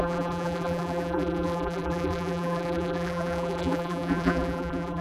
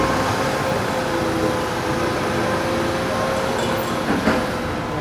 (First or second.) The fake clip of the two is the first